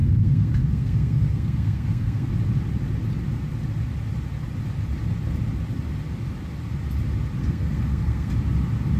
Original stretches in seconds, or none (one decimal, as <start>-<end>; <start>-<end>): 2.3-7.4; 8.3-9.0